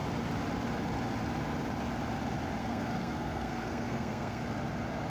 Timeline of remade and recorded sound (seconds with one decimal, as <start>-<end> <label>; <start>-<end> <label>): 0.0-2.6 recorded; 2.6-4.4 remade; 4.4-5.1 recorded